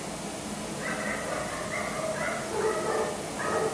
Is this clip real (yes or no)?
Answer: yes